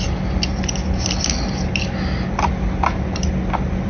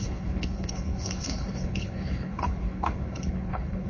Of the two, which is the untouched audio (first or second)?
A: first